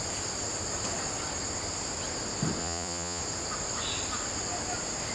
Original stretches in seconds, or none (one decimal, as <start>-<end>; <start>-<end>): 0.0-2.6; 3.2-5.1